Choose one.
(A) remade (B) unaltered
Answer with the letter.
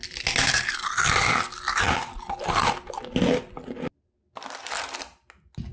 B